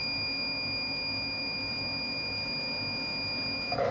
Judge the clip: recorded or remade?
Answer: recorded